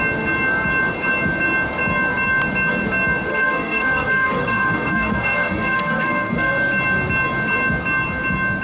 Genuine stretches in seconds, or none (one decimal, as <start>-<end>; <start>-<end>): 0.0-3.3; 6.5-8.6